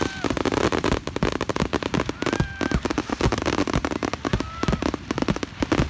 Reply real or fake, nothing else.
real